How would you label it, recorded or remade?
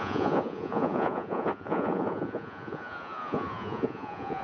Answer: remade